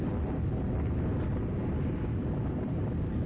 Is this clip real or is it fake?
real